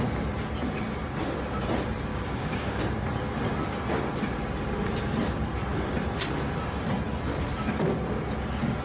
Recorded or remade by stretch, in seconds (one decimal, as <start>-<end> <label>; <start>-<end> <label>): 0.0-2.1 recorded; 2.1-2.8 remade; 2.8-8.8 recorded